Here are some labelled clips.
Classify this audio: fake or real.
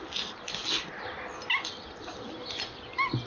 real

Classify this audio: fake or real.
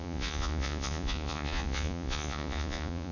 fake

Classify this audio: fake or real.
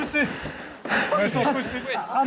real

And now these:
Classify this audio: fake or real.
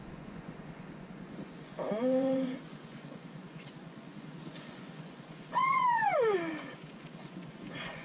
fake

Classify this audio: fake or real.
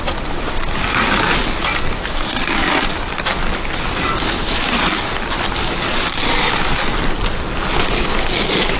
real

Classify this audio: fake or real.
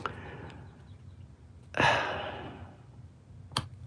real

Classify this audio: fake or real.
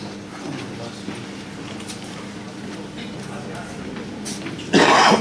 real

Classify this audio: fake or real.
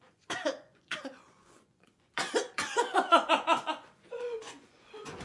fake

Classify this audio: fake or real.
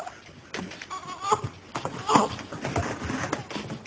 real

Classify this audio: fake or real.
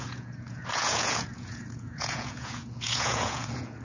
fake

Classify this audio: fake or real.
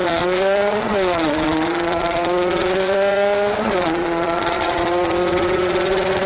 fake